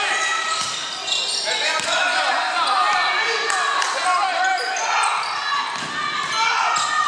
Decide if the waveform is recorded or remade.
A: recorded